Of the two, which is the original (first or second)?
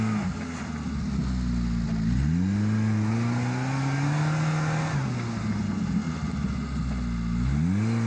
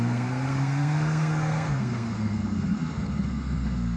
first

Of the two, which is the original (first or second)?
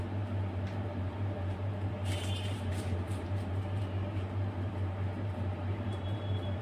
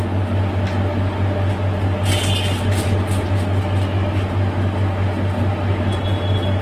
second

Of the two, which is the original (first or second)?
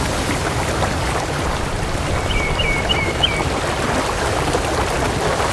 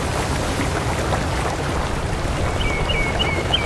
second